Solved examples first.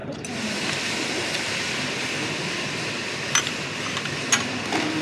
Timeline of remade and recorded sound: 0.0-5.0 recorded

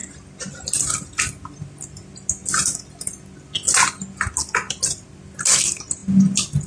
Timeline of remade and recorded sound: 0.0-6.7 recorded

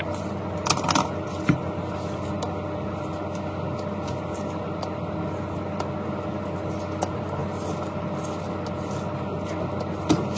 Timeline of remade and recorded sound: 0.0-10.4 recorded

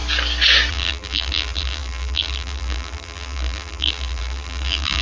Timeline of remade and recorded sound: 0.0-0.7 recorded; 0.7-5.0 remade

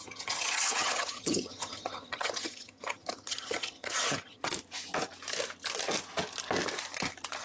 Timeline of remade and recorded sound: 0.0-4.4 remade; 4.4-7.4 recorded

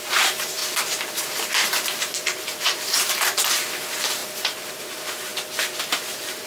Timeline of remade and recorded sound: 0.0-0.6 remade; 0.6-1.3 recorded; 1.3-5.3 remade; 5.3-5.9 recorded; 5.9-6.5 remade